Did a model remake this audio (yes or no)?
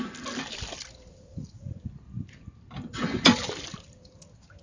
no